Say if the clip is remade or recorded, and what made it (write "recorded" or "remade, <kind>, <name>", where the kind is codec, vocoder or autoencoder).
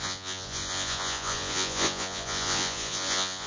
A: remade, vocoder, Vocos